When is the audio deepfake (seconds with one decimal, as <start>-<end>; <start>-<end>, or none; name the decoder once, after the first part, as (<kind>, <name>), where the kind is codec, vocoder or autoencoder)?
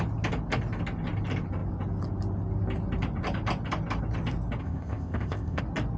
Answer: 4.6-5.6 (codec, ZipCodec)